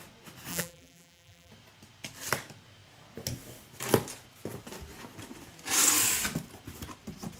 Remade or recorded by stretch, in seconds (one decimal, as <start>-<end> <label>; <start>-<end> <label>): 0.0-0.5 recorded; 0.5-1.5 remade; 1.5-7.4 recorded